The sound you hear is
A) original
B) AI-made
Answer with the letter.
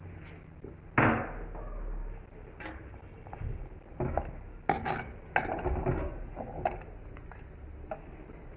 A